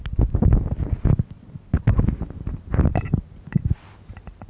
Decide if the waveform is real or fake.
real